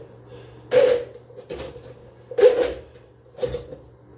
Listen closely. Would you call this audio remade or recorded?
recorded